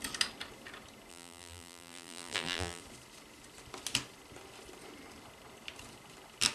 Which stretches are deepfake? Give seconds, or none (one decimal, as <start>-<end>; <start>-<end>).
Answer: 1.1-2.8